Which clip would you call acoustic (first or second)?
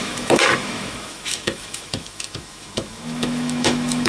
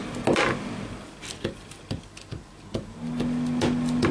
second